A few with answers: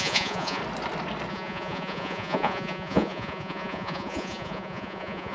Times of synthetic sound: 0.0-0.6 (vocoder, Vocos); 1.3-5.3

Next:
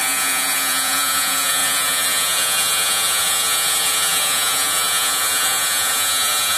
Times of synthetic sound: 0.0-6.6 (vocoder, Vocos)

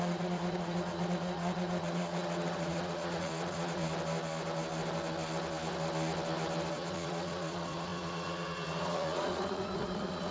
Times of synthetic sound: 0.0-3.8 (vocoder, Vocos); 6.7-10.3

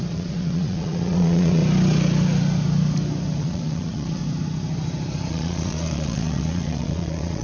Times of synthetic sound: 0.0-1.6 (vocoder, Vocos); 3.4-4.2; 5.3-7.4